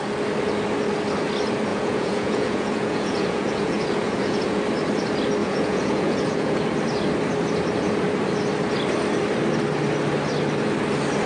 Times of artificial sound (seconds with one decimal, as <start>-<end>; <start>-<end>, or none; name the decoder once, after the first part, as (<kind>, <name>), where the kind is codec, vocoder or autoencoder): 1.7-4.6 (vocoder, Vocos); 5.4-6.6